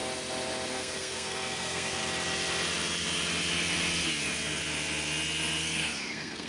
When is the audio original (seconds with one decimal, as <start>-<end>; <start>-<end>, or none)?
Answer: 0.0-0.7; 2.0-5.6